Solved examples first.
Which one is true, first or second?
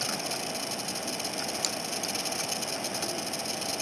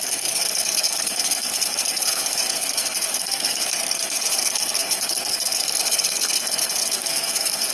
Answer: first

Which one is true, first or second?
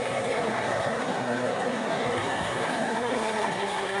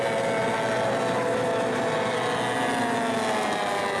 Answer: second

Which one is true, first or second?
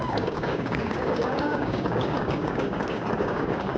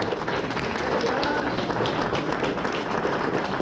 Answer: second